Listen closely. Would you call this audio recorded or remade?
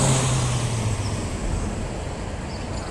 recorded